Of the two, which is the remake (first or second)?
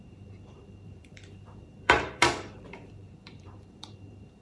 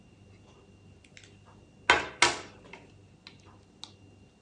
first